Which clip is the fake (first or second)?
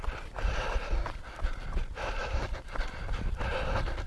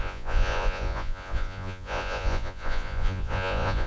second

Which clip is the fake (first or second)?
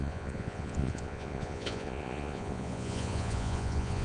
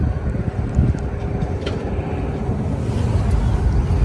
first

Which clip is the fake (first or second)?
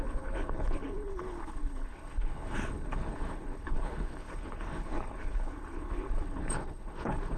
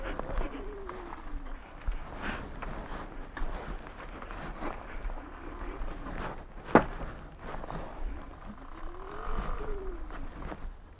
first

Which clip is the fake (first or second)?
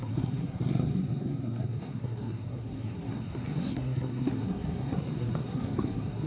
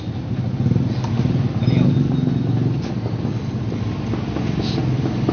first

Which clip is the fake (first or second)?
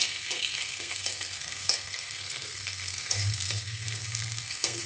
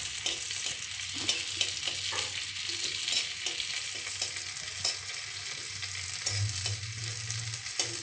first